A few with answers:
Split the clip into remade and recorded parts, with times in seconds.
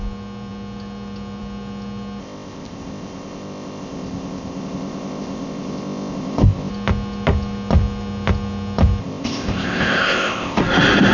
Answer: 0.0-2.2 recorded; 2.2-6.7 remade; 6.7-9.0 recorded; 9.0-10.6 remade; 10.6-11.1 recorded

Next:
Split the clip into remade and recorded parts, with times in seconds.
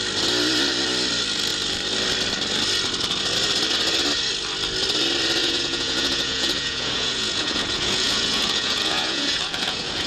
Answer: 0.0-5.4 recorded; 5.4-10.1 remade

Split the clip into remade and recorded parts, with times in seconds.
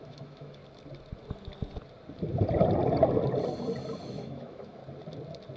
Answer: 0.0-0.6 remade; 0.6-4.0 recorded; 4.0-4.8 remade; 4.8-5.6 recorded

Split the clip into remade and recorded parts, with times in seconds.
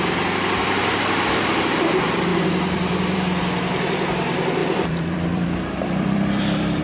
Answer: 0.0-2.3 recorded; 2.3-3.4 remade; 3.4-4.6 recorded; 4.6-6.8 remade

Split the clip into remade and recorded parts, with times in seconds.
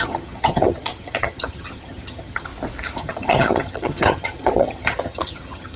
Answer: 0.0-2.5 remade; 2.5-3.0 recorded; 3.0-5.8 remade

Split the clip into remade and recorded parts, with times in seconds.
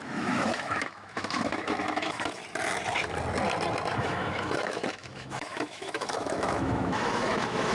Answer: 0.0-2.4 remade; 2.4-4.0 recorded; 4.0-7.7 remade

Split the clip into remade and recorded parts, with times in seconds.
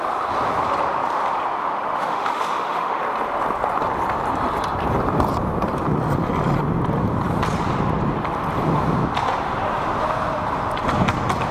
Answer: 0.0-1.6 recorded; 1.6-3.0 remade; 3.0-11.5 recorded